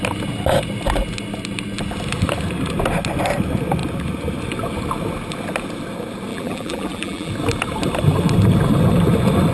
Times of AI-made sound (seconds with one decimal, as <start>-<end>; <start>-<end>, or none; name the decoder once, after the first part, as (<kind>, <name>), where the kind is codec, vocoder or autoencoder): 6.3-7.3 (vocoder, BigVGAN v2)